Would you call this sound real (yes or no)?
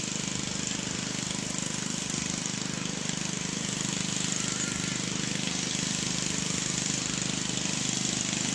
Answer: yes